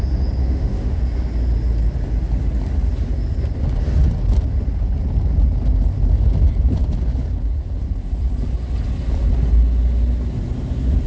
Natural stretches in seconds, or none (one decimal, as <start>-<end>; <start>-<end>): 0.0-0.4; 1.0-11.1